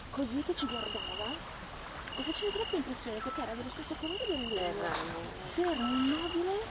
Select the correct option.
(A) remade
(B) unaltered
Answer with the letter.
B